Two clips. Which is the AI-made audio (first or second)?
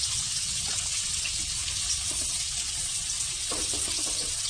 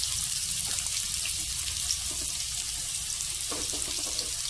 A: first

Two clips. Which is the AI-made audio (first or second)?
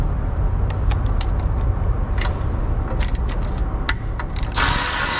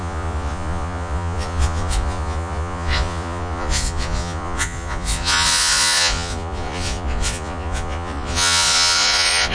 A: second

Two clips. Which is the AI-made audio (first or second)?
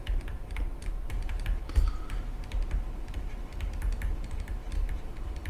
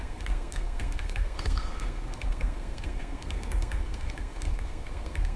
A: second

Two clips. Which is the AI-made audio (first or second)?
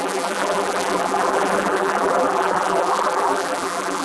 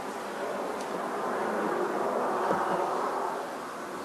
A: first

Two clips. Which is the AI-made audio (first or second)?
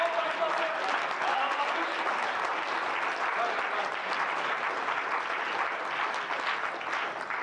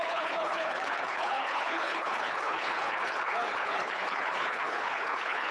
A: second